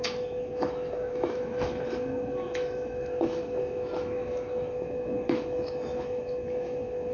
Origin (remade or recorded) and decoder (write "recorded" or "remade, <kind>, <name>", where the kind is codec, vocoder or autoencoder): remade, autoencoder, DAC-VAE